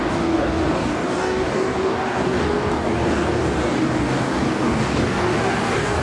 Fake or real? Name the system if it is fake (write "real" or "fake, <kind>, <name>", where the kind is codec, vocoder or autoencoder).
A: fake, codec, DAC